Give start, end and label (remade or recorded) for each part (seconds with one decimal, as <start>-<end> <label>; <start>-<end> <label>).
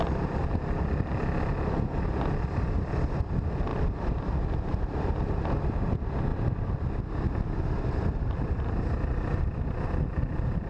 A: 0.0-0.4 remade; 0.4-2.0 recorded; 2.0-10.7 remade